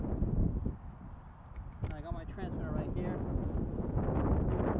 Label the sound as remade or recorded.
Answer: recorded